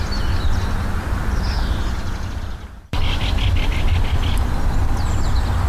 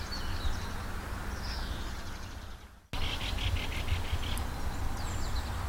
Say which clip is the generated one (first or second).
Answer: first